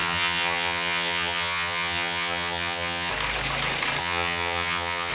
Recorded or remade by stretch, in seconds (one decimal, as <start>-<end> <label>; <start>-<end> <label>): 0.0-3.1 remade; 3.1-4.0 recorded; 4.0-5.1 remade